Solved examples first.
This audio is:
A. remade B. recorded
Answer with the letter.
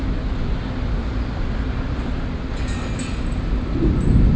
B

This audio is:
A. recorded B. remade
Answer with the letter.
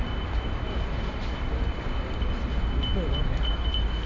A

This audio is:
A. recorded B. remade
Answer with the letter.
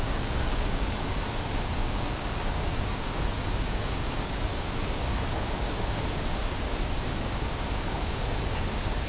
B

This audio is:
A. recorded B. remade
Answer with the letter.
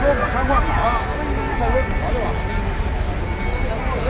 A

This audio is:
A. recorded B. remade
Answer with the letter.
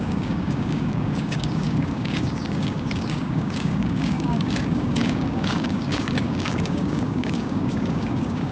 B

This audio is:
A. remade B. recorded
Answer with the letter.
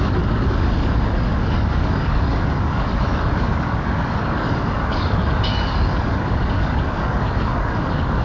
A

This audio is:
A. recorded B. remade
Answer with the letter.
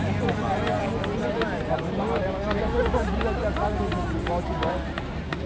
A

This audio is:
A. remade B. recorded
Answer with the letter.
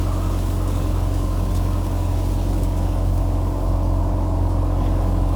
A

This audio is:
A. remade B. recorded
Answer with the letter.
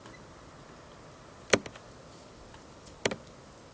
B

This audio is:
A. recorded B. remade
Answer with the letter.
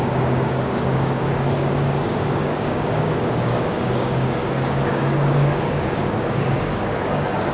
B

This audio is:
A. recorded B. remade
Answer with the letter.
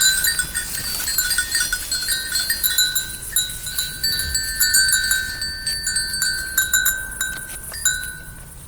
A